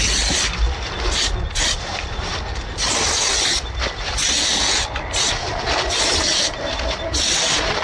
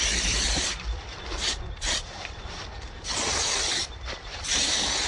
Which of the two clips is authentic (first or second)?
first